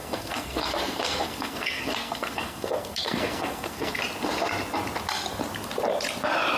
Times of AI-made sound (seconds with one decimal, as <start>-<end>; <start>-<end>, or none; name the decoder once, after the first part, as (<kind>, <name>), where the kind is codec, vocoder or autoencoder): 0.0-4.0 (codec, SNAC)